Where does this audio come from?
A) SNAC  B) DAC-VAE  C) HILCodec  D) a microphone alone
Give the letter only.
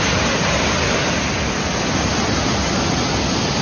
D